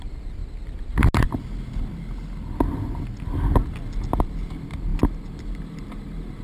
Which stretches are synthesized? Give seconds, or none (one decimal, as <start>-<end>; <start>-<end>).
none